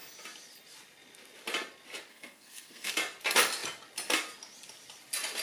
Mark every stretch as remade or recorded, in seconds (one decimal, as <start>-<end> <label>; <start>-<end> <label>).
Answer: 0.0-2.1 recorded; 2.1-2.9 remade; 2.9-5.4 recorded